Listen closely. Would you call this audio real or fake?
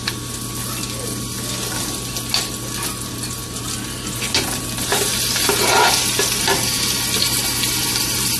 real